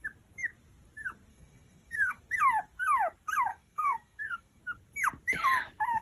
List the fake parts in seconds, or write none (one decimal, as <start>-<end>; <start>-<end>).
1.3-2.2; 3.5-4.6